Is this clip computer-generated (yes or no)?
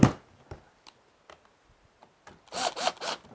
no